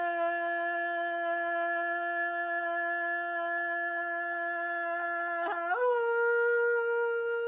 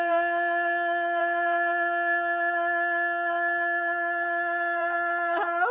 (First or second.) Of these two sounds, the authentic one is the first